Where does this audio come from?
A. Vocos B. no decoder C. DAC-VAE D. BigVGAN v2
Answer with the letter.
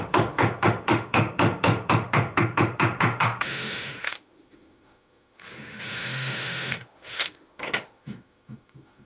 C